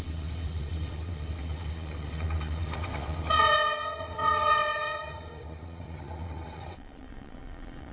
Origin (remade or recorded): remade